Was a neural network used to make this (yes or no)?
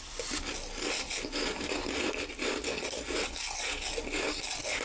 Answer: no